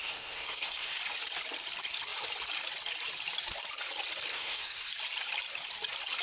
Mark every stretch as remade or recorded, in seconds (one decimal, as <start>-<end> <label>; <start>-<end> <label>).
0.0-1.0 remade; 1.0-4.3 recorded; 4.3-4.9 remade; 4.9-6.2 recorded